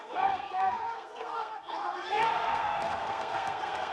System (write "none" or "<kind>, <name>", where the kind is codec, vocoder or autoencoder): codec, SNAC